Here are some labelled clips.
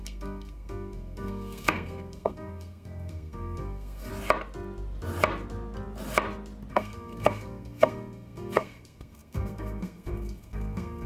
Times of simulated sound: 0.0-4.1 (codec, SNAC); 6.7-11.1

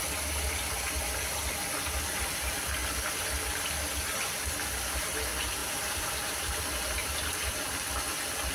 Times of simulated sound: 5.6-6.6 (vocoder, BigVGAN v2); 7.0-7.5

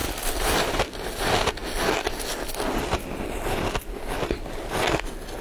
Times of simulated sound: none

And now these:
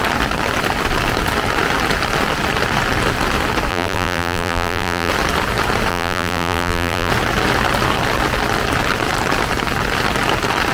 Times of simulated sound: 3.7-5.1 (vocoder, BigVGAN v2); 5.9-7.1

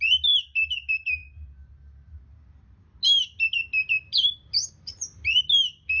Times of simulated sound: none

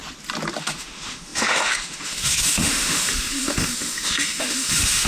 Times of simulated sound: 0.6-5.1 (autoencoder, DAC-VAE)